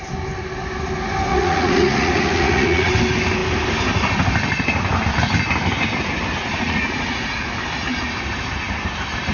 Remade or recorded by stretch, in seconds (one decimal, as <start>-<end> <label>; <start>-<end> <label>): 0.0-1.3 recorded; 1.3-2.9 remade; 2.9-6.4 recorded; 6.4-7.5 remade; 7.5-9.3 recorded